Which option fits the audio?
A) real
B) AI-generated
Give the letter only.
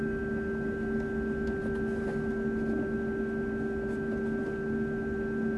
A